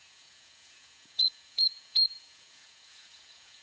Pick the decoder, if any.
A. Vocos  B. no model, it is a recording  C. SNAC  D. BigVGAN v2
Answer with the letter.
A